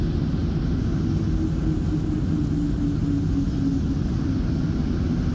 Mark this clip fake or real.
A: real